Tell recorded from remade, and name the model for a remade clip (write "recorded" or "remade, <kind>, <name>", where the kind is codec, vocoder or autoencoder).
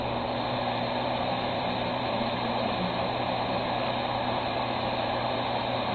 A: remade, vocoder, BigVGAN v2